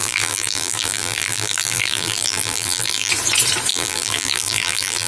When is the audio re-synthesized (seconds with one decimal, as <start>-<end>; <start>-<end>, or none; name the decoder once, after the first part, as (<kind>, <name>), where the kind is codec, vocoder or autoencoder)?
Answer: 0.0-3.1 (vocoder, BigVGAN v2); 3.7-5.1